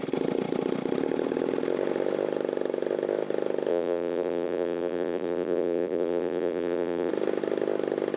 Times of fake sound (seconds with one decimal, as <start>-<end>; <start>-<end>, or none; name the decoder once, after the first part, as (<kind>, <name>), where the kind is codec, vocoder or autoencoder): 3.7-7.1 (vocoder, BigVGAN v2)